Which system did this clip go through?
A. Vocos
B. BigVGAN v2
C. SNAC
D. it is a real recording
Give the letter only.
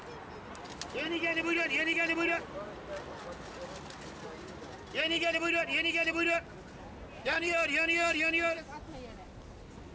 D